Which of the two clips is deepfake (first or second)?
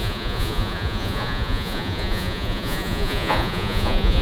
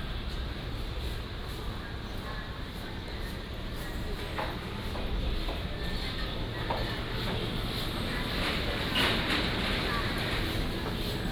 first